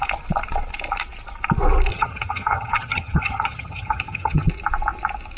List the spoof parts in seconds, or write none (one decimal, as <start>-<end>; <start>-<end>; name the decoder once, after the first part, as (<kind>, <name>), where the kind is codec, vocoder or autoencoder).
1.9-4.5 (vocoder, HiFi-GAN)